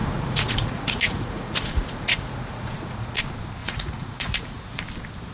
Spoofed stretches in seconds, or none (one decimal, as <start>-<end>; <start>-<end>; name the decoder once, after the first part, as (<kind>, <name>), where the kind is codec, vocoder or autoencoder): 0.0-3.2 (vocoder, Vocos); 3.6-4.8